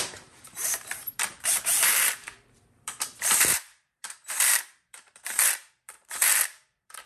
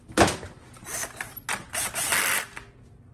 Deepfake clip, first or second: first